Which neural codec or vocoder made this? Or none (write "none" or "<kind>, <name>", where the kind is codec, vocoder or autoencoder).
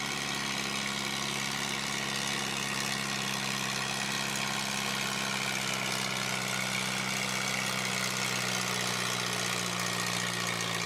none